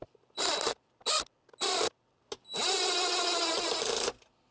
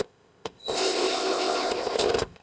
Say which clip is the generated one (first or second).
second